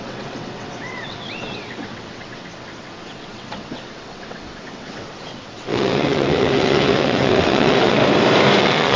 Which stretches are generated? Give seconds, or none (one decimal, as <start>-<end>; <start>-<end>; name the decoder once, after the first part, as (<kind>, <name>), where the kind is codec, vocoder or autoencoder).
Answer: 0.0-8.0 (vocoder, WaveNeXt); 8.6-9.0